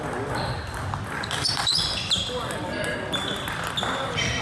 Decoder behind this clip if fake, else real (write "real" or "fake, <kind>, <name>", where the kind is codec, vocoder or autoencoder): real